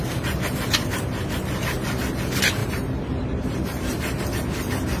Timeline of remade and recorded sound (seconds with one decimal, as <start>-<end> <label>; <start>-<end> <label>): 0.0-2.6 recorded; 2.6-4.2 remade; 4.2-5.0 recorded